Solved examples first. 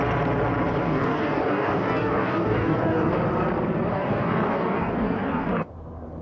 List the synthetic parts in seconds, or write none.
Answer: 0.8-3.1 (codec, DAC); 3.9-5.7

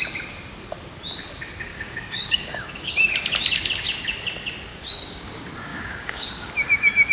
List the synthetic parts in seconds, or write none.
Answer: 1.7-2.9 (codec, DAC); 4.7-5.3; 5.7-6.3

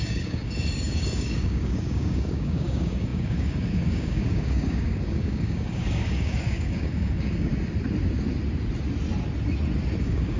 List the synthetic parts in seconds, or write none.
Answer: 0.0-7.5 (codec, DAC); 10.0-10.4